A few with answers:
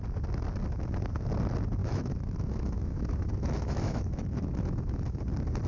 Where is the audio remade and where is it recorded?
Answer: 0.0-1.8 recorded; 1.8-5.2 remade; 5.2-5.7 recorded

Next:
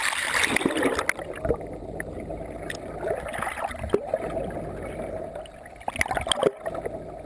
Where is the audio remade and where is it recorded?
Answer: 0.0-1.8 recorded; 1.8-2.4 remade; 2.4-7.3 recorded

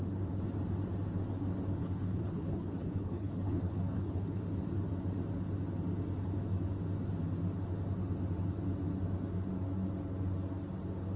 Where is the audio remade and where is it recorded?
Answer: 0.0-1.8 recorded; 1.8-4.4 remade; 4.4-11.2 recorded

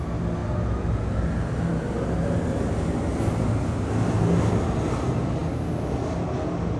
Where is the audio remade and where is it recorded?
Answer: 0.0-6.8 recorded

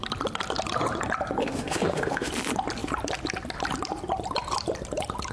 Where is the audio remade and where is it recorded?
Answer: 0.0-1.4 recorded; 1.4-2.3 remade; 2.3-5.3 recorded

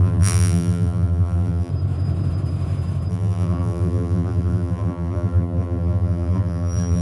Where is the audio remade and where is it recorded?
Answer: 0.0-1.7 remade; 1.7-3.1 recorded; 3.1-7.0 remade

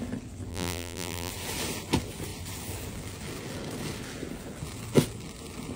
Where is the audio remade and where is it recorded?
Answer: 0.0-0.5 recorded; 0.5-1.3 remade; 1.3-5.8 recorded